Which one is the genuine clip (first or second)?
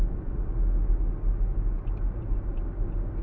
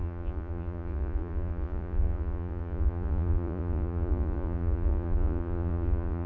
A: first